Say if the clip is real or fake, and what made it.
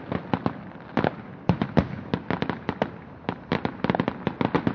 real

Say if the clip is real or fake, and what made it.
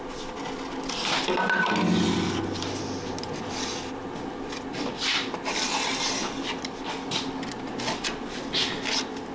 real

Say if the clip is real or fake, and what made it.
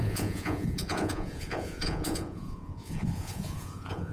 fake, vocoder, Vocos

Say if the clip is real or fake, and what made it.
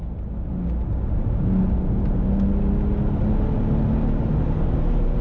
real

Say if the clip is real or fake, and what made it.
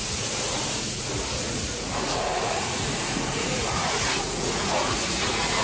fake, vocoder, Vocos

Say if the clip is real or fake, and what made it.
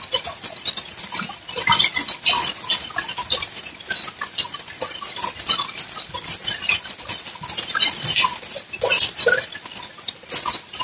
real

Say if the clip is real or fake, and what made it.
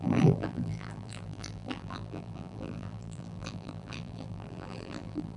fake, vocoder, BigVGAN v2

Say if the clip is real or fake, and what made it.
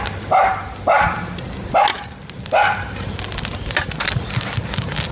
real